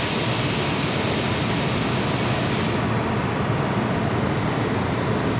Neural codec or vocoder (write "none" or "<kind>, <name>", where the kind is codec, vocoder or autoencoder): none